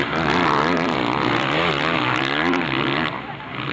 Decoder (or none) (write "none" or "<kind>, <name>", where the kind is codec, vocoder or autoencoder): none